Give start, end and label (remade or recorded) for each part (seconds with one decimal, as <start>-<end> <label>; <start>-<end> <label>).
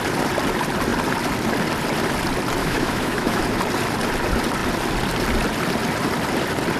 0.0-2.6 recorded; 2.6-3.4 remade; 3.4-6.8 recorded